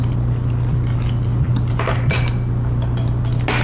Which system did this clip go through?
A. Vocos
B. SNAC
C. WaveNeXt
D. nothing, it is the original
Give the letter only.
D